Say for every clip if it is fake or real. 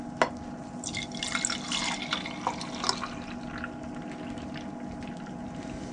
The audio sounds real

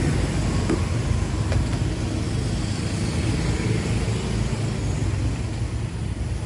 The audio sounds real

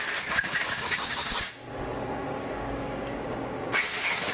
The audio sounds fake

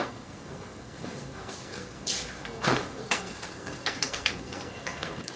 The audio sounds fake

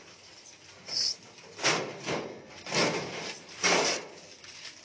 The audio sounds real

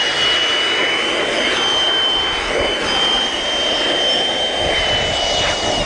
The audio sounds real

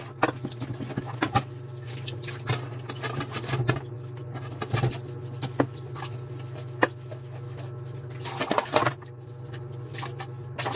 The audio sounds real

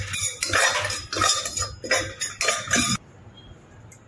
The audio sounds real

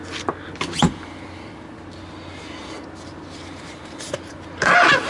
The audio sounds real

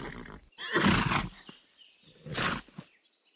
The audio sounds real